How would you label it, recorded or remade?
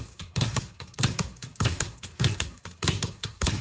remade